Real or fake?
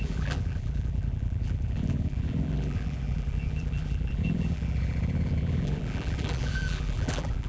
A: fake